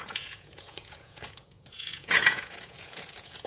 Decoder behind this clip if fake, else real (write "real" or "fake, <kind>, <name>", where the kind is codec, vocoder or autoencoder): fake, vocoder, Vocos